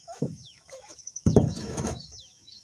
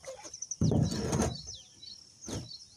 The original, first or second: second